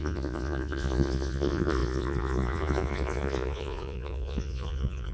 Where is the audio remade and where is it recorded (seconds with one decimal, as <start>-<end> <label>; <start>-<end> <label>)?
0.0-5.1 remade